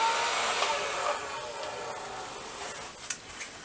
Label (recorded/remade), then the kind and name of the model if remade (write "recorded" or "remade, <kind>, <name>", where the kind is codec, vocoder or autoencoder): recorded